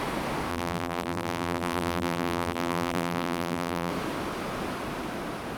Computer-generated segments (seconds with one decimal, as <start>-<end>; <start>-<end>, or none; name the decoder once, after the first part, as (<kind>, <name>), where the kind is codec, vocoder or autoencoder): 0.5-3.9 (vocoder, BigVGAN v2)